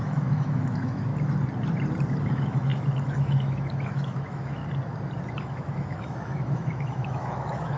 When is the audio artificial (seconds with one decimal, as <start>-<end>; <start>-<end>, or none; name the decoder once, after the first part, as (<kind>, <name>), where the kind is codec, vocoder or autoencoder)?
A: 0.0-1.1 (autoencoder, DAC-VAE); 2.2-4.6; 5.4-7.8